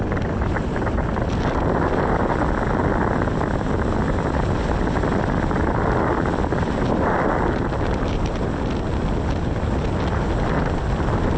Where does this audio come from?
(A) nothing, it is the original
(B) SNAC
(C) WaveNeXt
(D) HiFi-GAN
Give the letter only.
A